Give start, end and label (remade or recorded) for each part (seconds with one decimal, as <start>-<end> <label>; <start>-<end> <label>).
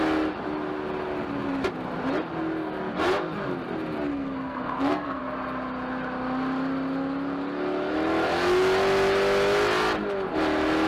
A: 0.0-4.1 recorded; 4.1-5.2 remade; 5.2-10.9 recorded